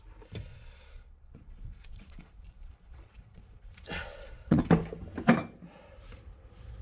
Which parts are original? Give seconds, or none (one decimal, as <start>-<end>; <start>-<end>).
0.0-0.5; 4.6-6.8